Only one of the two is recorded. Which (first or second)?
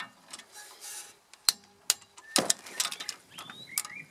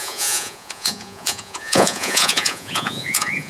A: first